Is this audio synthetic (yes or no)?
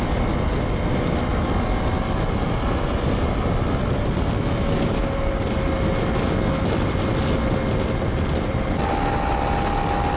no